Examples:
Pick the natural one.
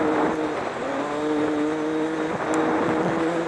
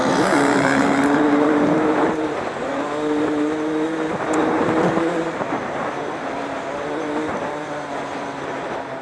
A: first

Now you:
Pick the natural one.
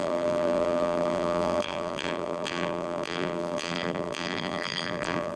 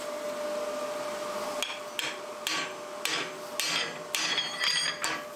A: second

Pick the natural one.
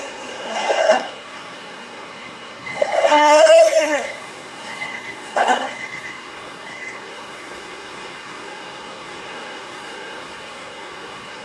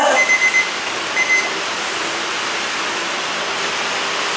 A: second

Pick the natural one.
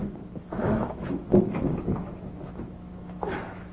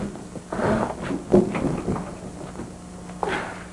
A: second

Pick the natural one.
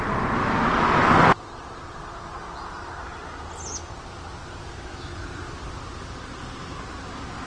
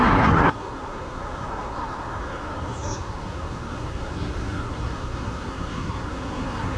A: first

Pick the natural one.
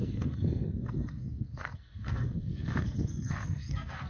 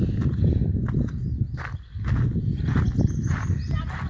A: second